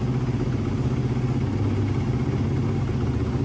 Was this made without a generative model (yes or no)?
yes